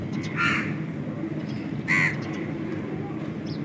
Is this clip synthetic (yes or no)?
no